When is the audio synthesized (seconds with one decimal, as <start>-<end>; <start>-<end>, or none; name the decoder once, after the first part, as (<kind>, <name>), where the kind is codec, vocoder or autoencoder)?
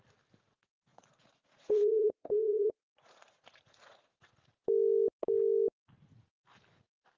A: 0.9-4.1 (vocoder, Vocos)